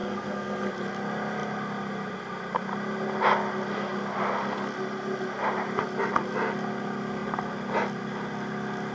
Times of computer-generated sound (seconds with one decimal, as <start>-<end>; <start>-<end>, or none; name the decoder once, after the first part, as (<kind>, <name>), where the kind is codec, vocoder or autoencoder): 0.0-0.7 (codec, SNAC)